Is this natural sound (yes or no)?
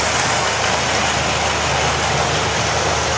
yes